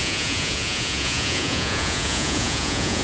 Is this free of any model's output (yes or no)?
no